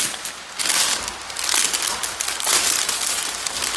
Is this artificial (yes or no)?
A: no